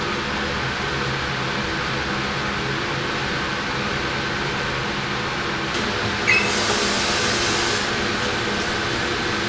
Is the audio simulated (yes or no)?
no